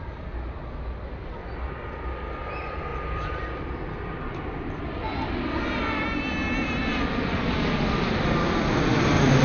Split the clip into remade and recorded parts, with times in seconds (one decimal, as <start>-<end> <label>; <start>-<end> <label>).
0.0-2.9 recorded; 2.9-5.3 remade; 5.3-9.4 recorded